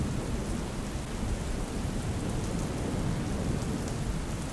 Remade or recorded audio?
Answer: recorded